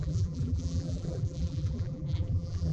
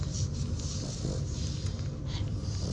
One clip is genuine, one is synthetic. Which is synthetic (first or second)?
first